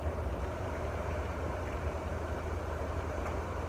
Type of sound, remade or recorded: remade